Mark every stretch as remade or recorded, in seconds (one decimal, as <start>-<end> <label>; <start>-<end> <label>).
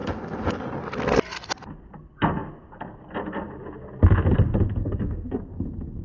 0.0-4.8 recorded; 4.8-5.4 remade; 5.4-6.0 recorded